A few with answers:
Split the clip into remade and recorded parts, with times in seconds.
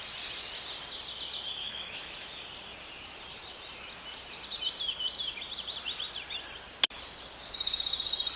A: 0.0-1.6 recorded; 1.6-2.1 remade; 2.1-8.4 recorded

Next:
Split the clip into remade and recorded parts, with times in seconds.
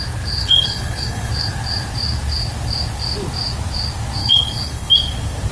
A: 0.0-0.4 recorded; 0.4-1.3 remade; 1.3-4.2 recorded; 4.2-4.9 remade; 4.9-5.5 recorded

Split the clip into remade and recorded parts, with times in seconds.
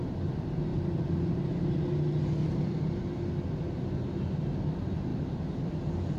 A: 0.0-5.1 recorded; 5.1-5.7 remade; 5.7-6.2 recorded